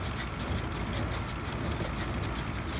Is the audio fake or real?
real